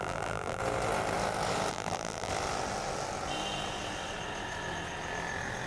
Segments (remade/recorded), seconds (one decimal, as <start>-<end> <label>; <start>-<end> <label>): 0.0-0.6 remade; 0.6-1.7 recorded; 1.7-2.3 remade; 2.3-5.7 recorded